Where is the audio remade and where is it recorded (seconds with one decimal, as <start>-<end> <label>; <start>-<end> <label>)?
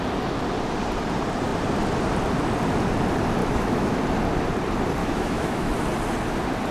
0.0-3.4 recorded; 3.4-4.0 remade; 4.0-5.0 recorded; 5.0-5.7 remade; 5.7-6.7 recorded